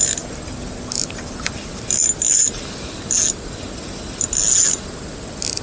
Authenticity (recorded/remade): recorded